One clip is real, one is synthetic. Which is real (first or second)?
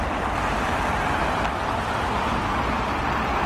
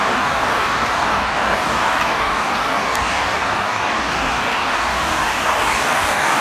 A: first